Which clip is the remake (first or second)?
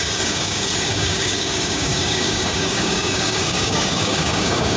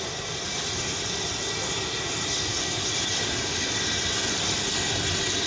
first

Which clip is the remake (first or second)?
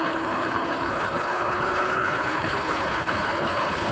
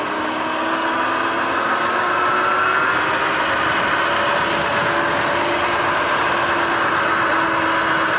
first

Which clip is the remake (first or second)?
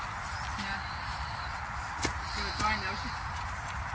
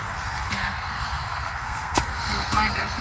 second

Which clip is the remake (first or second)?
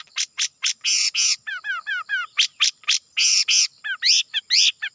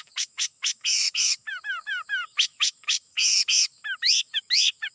second